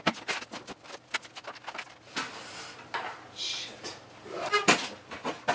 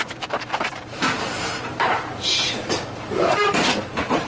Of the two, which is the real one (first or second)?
first